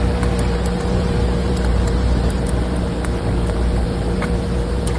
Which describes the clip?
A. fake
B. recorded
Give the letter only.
A